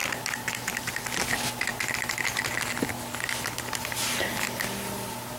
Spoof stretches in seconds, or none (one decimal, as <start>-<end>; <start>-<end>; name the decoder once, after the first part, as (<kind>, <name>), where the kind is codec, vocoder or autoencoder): none